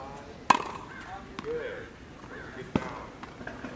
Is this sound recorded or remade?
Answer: recorded